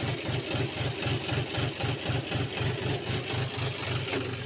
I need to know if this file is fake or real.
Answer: real